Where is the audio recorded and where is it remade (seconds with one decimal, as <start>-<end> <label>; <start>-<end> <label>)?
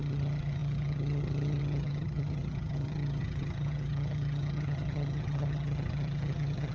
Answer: 0.0-6.7 remade